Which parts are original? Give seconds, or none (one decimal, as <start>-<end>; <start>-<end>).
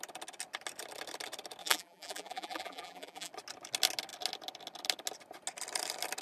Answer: 0.0-1.6; 3.3-6.2